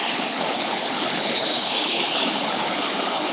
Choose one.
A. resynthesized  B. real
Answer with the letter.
A